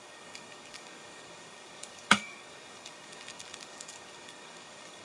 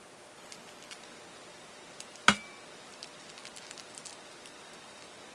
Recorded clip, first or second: second